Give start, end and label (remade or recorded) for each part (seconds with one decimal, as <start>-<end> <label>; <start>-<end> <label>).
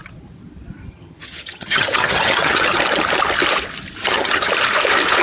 0.0-0.9 recorded; 0.9-2.8 remade; 2.8-4.0 recorded; 4.0-4.5 remade; 4.5-5.2 recorded